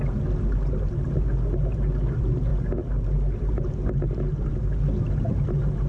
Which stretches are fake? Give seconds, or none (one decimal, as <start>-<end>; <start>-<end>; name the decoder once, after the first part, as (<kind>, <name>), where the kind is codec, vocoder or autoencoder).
none